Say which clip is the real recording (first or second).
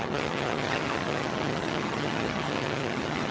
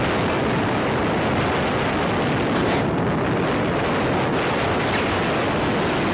second